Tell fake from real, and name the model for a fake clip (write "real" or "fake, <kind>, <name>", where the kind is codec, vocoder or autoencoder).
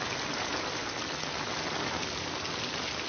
real